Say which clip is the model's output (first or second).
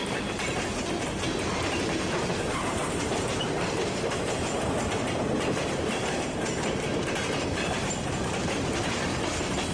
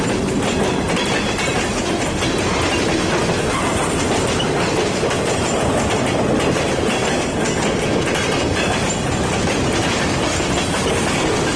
first